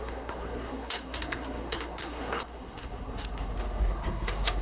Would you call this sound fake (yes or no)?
yes